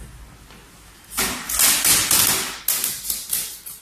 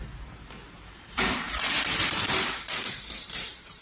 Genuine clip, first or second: first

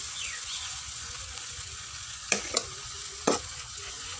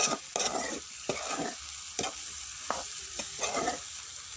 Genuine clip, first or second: second